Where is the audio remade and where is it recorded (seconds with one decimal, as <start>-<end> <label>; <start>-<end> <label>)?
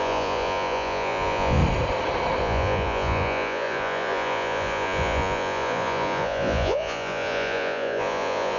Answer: 0.0-1.6 remade; 1.6-2.4 recorded; 2.4-8.6 remade